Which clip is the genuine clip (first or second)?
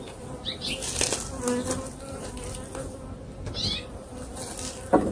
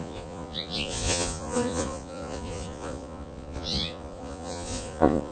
first